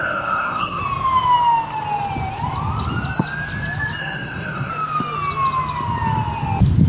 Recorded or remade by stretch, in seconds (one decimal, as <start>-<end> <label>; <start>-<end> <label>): 0.0-0.8 remade; 0.8-4.0 recorded; 4.0-4.7 remade; 4.7-6.9 recorded

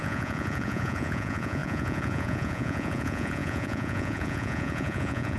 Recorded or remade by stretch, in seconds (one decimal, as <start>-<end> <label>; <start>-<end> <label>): 0.0-5.4 remade